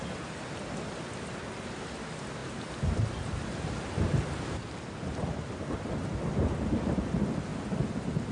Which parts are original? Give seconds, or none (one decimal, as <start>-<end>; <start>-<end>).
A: 0.0-8.3